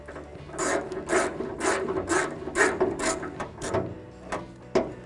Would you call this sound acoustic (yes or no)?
yes